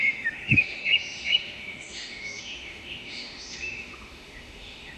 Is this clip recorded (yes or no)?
no